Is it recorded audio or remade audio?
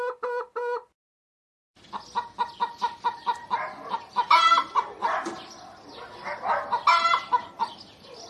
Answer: recorded